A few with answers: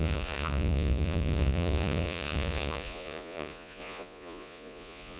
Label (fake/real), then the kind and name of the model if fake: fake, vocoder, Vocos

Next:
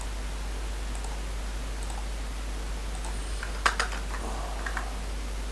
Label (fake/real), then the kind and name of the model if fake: real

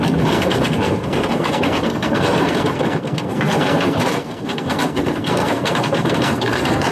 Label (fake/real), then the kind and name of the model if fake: fake, codec, SNAC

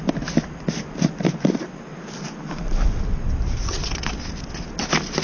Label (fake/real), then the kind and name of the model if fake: real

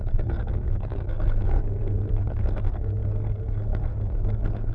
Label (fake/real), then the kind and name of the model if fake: fake, codec, SNAC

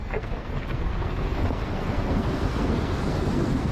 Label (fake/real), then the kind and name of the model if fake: fake, codec, SNAC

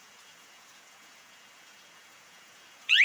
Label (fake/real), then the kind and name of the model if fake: fake, vocoder, Vocos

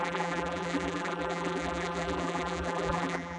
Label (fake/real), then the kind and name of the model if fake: fake, vocoder, BigVGAN v2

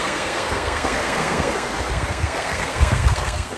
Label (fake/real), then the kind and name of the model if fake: fake, codec, SNAC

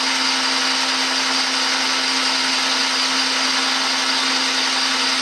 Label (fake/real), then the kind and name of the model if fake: real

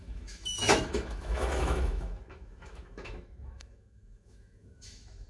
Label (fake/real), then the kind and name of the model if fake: fake, autoencoder, DAC-VAE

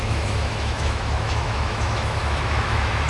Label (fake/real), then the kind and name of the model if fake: fake, autoencoder, DAC-VAE